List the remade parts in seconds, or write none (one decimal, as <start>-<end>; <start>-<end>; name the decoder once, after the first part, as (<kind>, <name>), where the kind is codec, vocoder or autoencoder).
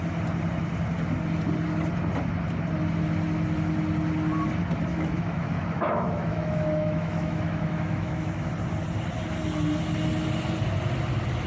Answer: 4.9-8.5 (autoencoder, DAC-VAE)